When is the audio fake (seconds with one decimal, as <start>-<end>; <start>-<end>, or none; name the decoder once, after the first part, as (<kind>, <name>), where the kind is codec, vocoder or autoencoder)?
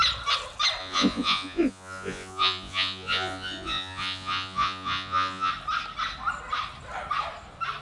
0.8-5.5 (vocoder, Vocos)